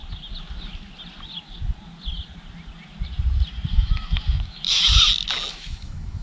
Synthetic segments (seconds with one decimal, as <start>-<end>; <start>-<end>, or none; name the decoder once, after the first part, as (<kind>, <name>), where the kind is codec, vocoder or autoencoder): 3.7-4.8 (autoencoder, DAC-VAE); 5.5-6.2